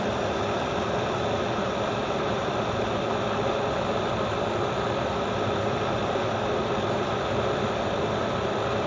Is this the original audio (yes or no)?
yes